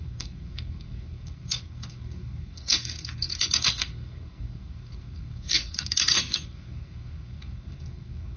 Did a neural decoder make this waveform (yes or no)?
yes